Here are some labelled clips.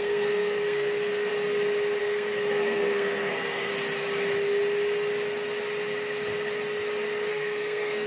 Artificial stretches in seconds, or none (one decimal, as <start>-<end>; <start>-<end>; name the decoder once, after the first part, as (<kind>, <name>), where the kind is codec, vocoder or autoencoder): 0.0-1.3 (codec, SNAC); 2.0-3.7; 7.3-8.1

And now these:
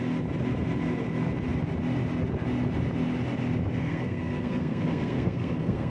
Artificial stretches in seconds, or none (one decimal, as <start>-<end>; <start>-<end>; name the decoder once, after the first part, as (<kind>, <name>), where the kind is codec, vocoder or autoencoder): 3.8-5.9 (codec, SNAC)

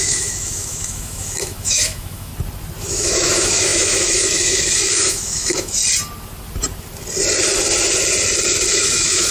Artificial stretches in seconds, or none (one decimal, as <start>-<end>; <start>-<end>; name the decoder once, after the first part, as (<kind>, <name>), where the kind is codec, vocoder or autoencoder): 0.0-2.3 (autoencoder, DAC-VAE); 2.8-5.8; 8.7-9.3